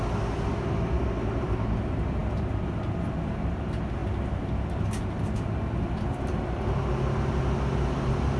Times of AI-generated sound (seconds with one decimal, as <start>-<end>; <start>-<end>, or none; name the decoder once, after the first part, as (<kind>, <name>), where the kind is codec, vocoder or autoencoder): none